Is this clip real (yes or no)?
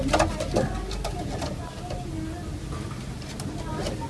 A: yes